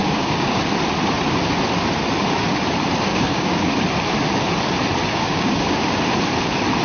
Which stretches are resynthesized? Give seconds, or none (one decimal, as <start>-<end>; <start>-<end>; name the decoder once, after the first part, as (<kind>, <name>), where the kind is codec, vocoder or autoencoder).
0.0-0.6 (codec, DAC); 3.1-3.7; 5.0-6.0